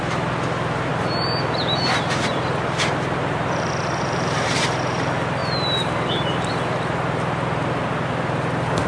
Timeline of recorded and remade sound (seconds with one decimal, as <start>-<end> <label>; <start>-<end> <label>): 0.0-0.9 recorded; 0.9-4.6 remade; 4.6-5.4 recorded; 5.4-6.5 remade; 6.5-8.9 recorded

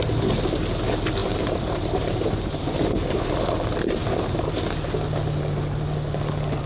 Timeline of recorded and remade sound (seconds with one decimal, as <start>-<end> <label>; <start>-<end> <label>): 0.0-1.2 recorded; 1.2-3.3 remade; 3.3-4.0 recorded; 4.0-4.6 remade; 4.6-6.7 recorded

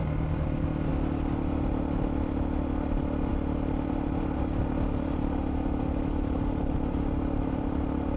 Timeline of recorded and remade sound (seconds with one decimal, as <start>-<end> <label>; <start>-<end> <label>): 0.0-0.9 remade; 0.9-3.3 recorded; 3.3-8.2 remade

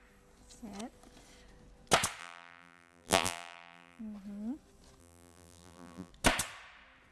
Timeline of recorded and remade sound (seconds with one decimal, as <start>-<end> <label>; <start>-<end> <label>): 0.0-2.2 recorded; 2.2-4.0 remade; 4.0-5.0 recorded; 5.0-6.1 remade; 6.1-7.1 recorded

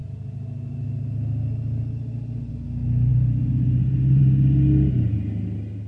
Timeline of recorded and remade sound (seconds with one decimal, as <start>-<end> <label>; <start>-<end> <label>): 0.0-3.1 recorded; 3.1-4.2 remade; 4.2-5.9 recorded

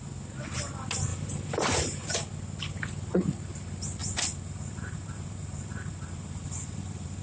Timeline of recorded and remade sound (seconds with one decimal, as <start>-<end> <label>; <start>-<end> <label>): 0.0-1.1 recorded; 1.1-2.1 remade; 2.1-4.0 recorded; 4.0-7.2 remade